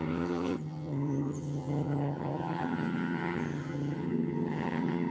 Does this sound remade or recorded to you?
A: remade